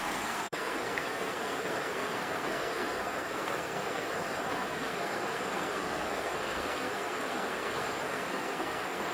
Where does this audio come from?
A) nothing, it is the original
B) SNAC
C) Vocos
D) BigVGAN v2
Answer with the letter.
B